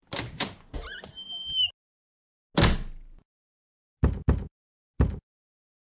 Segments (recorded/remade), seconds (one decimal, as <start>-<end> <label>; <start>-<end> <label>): 0.0-5.9 recorded